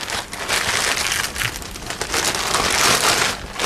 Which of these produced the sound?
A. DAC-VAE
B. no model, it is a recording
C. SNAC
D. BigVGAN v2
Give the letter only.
B